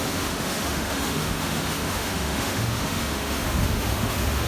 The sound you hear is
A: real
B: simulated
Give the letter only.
B